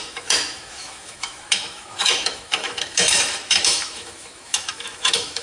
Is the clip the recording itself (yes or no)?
no